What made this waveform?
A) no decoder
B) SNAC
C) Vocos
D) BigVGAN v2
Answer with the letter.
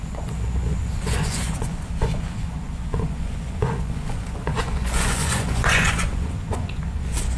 C